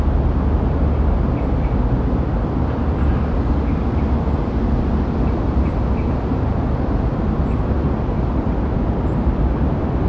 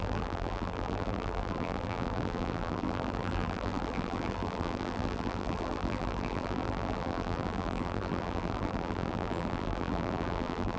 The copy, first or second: second